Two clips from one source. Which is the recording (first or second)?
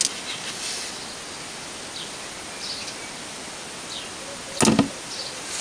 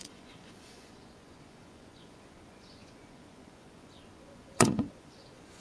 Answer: first